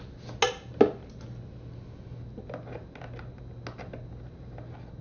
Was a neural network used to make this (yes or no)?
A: no